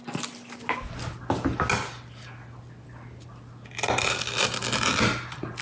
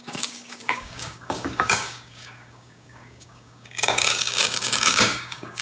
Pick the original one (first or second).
first